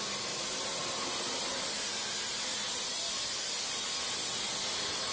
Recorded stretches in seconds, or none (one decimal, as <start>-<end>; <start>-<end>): 0.0-5.1